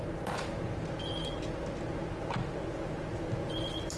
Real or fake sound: real